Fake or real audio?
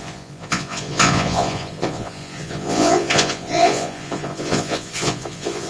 fake